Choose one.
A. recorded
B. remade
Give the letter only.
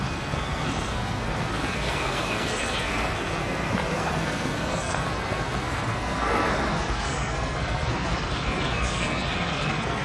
B